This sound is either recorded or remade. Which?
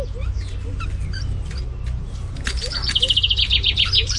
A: recorded